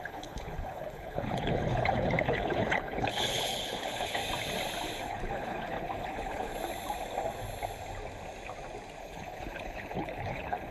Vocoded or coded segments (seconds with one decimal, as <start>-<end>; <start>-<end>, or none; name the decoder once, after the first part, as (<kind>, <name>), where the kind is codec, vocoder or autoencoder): 0.0-4.2 (codec, HILCodec); 5.1-6.5; 9.0-10.7